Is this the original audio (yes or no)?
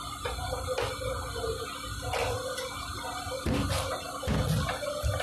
yes